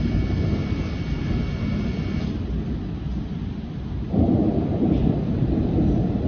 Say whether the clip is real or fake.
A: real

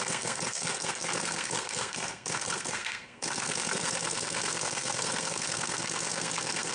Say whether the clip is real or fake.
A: fake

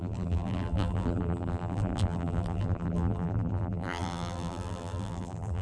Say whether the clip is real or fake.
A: fake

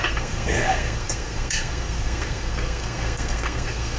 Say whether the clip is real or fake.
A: fake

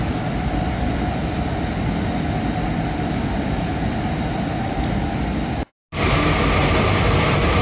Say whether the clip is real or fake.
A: real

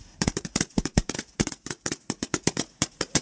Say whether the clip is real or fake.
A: fake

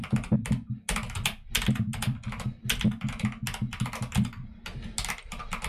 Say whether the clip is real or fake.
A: real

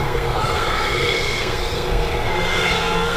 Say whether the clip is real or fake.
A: fake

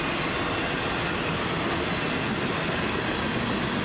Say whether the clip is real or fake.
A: real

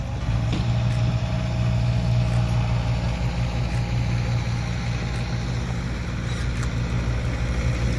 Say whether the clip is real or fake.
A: real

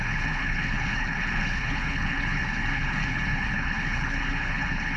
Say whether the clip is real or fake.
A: fake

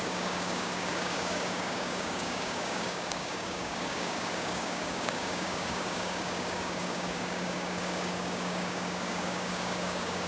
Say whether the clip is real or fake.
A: fake